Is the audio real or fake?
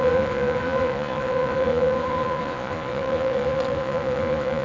fake